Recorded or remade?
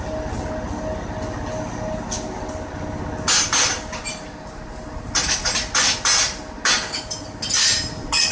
recorded